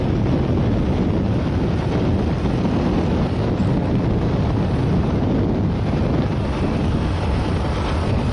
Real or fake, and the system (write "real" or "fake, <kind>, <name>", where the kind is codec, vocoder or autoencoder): real